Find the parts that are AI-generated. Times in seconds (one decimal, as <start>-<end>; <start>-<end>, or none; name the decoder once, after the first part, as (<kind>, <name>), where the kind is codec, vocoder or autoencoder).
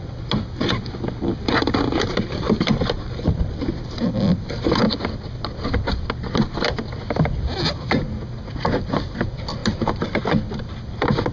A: none